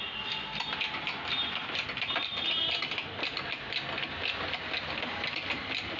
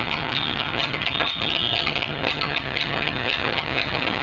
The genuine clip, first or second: first